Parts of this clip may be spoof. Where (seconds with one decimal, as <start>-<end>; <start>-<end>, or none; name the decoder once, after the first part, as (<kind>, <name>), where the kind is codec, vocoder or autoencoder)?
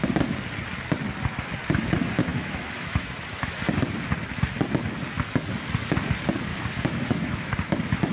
2.3-3.6 (autoencoder, DAC-VAE); 6.5-7.5